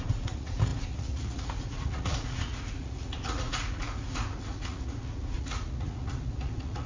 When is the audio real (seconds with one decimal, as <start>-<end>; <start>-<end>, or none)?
none